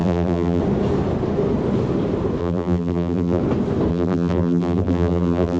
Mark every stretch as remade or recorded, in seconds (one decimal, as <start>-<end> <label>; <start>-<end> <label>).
0.0-0.6 remade; 0.6-2.4 recorded; 2.4-3.4 remade; 3.4-3.9 recorded; 3.9-5.6 remade